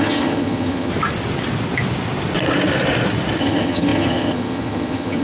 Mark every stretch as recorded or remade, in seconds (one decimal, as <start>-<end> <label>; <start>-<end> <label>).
0.0-0.9 remade; 0.9-3.4 recorded; 3.4-5.2 remade